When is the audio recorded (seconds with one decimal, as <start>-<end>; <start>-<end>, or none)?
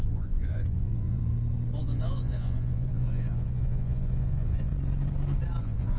1.2-1.8; 4.7-5.6